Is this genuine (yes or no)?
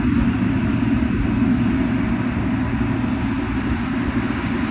yes